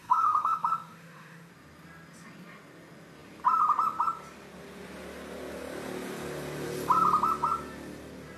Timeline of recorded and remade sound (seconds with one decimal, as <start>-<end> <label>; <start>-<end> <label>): 0.0-1.5 remade; 1.5-8.4 recorded